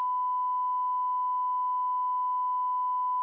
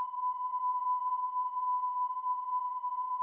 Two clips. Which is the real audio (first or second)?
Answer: first